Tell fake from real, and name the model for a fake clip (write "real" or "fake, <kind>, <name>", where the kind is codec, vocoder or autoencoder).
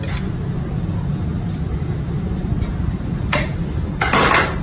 real